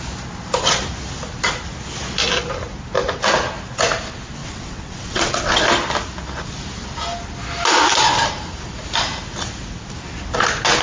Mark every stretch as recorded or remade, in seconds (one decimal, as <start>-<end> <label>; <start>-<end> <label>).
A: 0.0-4.4 recorded; 4.4-5.6 remade; 5.6-10.8 recorded